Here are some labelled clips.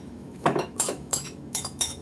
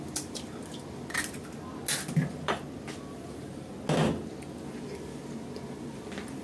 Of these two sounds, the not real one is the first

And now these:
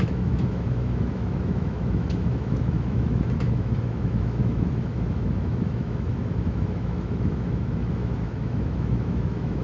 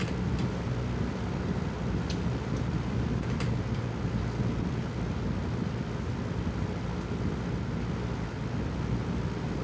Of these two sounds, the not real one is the first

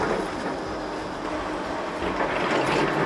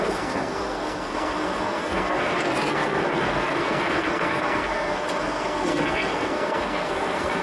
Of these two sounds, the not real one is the second